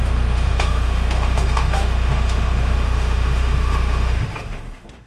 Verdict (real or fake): fake